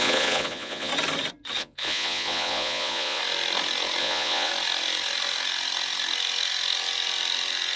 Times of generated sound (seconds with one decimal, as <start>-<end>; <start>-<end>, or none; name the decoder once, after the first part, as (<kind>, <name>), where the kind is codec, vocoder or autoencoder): 0.0-0.9 (vocoder, Vocos); 1.6-3.2; 4.0-4.5